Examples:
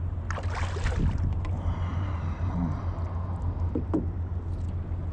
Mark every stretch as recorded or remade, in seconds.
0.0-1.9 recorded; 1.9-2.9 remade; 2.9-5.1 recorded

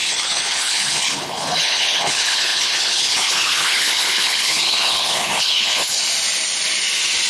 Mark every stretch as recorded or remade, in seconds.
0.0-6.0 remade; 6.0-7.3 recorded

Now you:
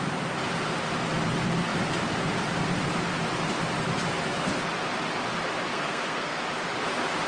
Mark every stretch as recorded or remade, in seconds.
0.0-5.7 recorded; 5.7-6.4 remade; 6.4-7.3 recorded

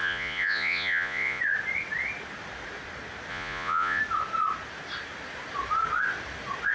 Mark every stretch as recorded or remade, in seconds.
0.0-1.4 remade; 1.4-3.3 recorded; 3.3-4.0 remade; 4.0-6.7 recorded

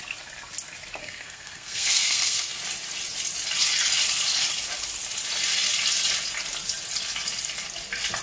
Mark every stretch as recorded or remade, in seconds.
0.0-1.0 recorded; 1.0-2.6 remade; 2.6-8.2 recorded

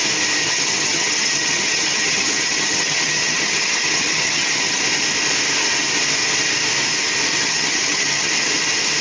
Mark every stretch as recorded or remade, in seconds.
0.0-0.4 recorded; 0.4-4.8 remade; 4.8-7.3 recorded; 7.3-8.3 remade; 8.3-9.0 recorded